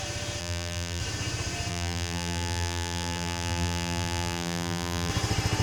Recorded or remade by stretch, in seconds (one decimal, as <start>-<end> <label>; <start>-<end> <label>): 0.0-0.4 recorded; 0.4-1.0 remade; 1.0-1.7 recorded; 1.7-5.1 remade; 5.1-5.6 recorded